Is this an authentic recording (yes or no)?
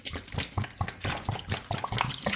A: yes